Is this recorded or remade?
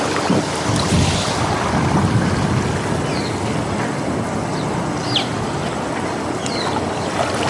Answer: recorded